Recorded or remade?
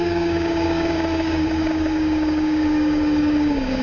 remade